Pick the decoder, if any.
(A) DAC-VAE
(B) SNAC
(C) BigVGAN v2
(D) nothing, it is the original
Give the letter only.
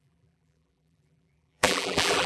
C